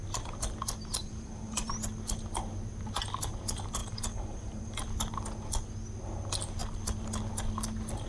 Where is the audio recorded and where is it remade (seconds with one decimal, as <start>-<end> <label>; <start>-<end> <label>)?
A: 0.0-1.0 recorded; 1.0-1.7 remade; 1.7-3.8 recorded; 3.8-4.8 remade; 4.8-8.1 recorded